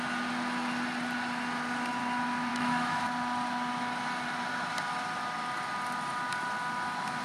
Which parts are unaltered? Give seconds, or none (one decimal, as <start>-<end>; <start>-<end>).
0.0-2.5; 3.0-7.2